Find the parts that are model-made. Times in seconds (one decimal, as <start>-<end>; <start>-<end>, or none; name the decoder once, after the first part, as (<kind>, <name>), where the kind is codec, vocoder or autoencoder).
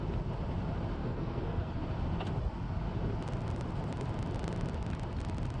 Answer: 1.0-1.8 (codec, SNAC)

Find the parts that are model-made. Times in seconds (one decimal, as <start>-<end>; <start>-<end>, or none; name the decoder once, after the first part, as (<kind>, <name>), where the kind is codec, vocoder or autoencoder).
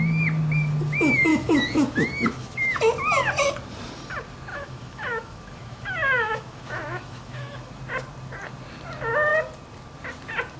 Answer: 1.3-2.8 (autoencoder, DAC-VAE); 4.5-7.7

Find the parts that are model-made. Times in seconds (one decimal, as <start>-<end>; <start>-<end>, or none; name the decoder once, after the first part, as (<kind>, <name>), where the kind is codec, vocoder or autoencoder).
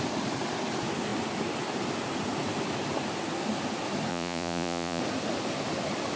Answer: 4.1-5.0 (vocoder, Vocos)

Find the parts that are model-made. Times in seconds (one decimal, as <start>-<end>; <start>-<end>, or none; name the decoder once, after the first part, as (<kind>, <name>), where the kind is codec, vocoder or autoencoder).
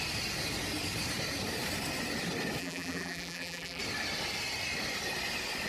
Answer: 2.6-3.8 (vocoder, BigVGAN v2)